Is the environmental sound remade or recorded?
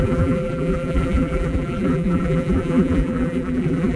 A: remade